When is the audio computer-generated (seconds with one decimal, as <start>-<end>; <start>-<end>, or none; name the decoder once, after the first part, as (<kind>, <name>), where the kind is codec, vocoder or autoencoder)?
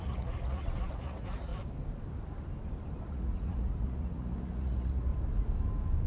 0.0-1.5 (vocoder, Vocos); 3.1-5.1